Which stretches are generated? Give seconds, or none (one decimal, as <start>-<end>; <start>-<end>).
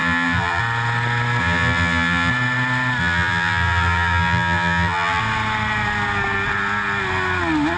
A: 0.0-0.6; 1.4-2.3; 3.0-5.2